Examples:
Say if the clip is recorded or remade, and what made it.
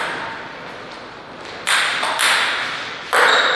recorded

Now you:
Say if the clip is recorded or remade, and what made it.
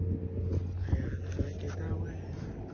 recorded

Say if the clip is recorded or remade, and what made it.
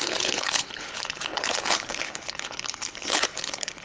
remade, codec, HILCodec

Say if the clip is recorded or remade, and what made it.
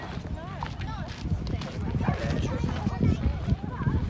recorded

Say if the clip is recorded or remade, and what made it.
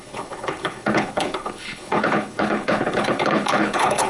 remade, codec, HILCodec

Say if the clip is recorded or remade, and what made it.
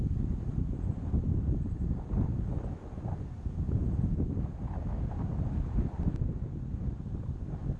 recorded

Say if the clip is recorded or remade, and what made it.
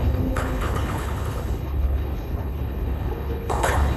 remade, codec, HILCodec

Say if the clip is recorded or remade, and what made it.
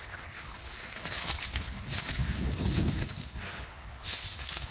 remade, codec, HILCodec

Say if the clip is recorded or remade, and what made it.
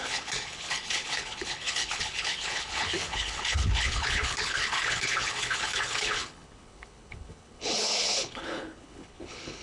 remade, codec, HILCodec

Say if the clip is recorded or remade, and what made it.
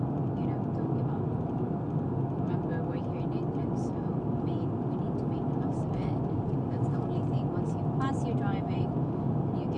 recorded